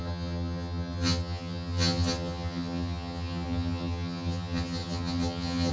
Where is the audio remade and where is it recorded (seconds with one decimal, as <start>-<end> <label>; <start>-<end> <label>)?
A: 0.0-5.7 remade